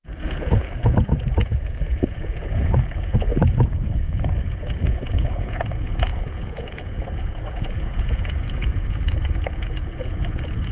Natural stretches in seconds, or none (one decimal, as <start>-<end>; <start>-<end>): none